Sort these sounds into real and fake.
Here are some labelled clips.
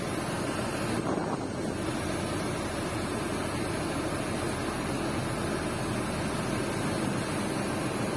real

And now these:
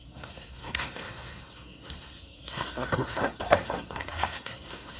fake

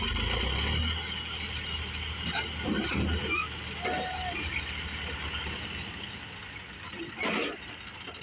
real